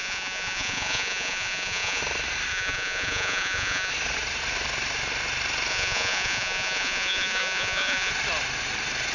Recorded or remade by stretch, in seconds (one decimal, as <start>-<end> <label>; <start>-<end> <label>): 0.0-2.0 remade; 2.0-2.5 recorded; 2.5-3.9 remade; 3.9-5.7 recorded; 5.7-8.1 remade; 8.1-9.1 recorded